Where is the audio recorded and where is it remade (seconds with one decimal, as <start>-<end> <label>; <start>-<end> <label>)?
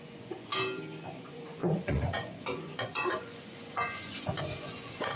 0.0-0.5 remade; 0.5-1.0 recorded; 1.0-5.2 remade